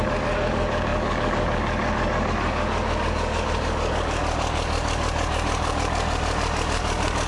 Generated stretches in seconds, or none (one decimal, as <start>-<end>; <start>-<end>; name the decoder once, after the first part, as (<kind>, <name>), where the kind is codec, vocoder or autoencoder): 0.0-7.3 (codec, DAC)